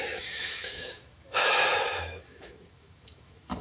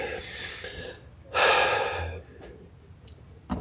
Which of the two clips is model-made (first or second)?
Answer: first